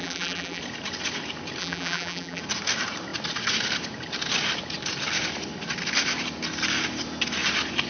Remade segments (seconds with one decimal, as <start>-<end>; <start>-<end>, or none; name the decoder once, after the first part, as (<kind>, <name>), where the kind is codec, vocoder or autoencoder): 0.0-0.6 (vocoder, BigVGAN v2); 1.6-2.4